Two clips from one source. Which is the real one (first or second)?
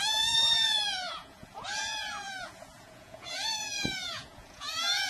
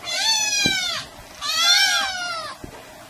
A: second